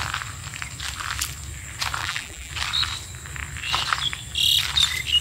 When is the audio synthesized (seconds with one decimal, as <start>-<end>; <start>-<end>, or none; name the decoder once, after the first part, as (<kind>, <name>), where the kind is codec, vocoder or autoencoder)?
2.0-2.5 (vocoder, BigVGAN v2)